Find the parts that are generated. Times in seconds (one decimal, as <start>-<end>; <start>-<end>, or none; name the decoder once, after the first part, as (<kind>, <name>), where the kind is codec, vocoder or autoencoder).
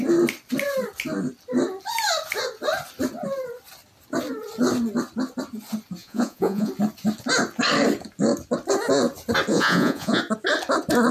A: 6.0-6.7 (vocoder, Vocos); 9.5-10.2